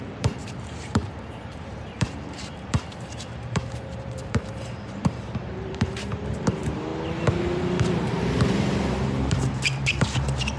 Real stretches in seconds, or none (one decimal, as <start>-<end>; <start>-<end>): 6.9-7.6